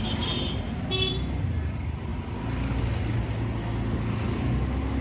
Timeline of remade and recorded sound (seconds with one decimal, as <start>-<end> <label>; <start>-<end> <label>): 0.0-5.0 recorded